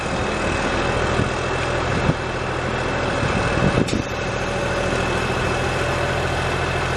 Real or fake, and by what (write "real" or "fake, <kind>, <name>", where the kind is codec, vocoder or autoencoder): real